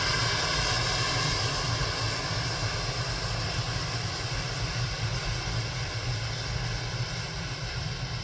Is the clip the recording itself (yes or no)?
yes